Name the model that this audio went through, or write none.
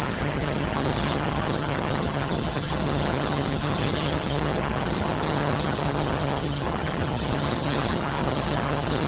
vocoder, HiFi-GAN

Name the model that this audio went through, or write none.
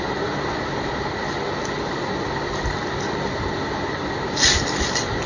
none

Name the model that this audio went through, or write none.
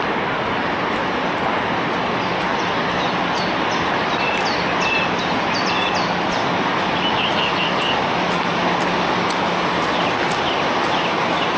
none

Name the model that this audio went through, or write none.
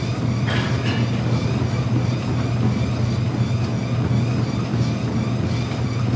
none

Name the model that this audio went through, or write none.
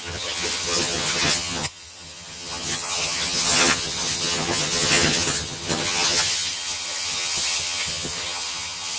vocoder, HiFi-GAN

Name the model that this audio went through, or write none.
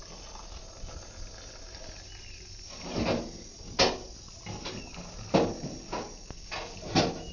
none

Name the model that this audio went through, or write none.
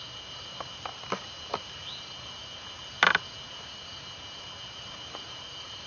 none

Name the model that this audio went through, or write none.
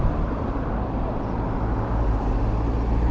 none